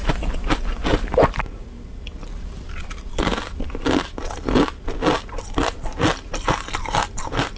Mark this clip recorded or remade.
recorded